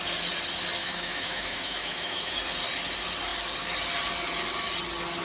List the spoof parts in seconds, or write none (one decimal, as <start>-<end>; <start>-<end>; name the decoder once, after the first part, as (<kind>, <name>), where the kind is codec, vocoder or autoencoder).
0.8-2.4 (autoencoder, DAC-VAE)